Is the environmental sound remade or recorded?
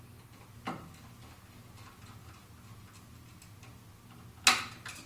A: recorded